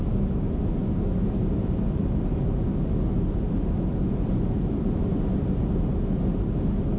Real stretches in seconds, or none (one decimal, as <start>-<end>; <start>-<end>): 0.0-7.0